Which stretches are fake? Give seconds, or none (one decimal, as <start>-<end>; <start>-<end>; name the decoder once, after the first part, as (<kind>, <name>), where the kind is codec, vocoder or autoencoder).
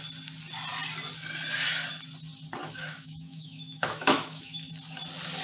2.6-4.7 (autoencoder, DAC-VAE)